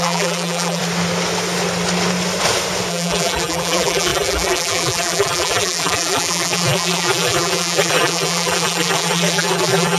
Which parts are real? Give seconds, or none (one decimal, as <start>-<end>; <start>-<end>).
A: 0.8-2.9